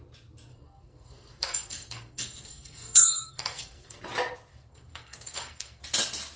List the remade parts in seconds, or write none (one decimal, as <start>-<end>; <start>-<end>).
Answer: 0.5-4.0; 4.5-5.8